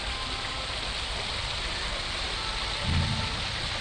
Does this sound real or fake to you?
real